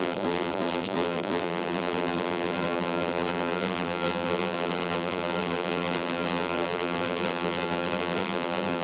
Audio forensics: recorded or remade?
remade